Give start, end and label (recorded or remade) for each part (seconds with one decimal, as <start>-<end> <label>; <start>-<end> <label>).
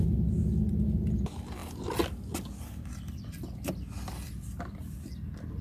0.0-5.6 recorded